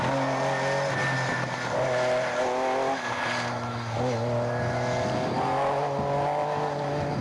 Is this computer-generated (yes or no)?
no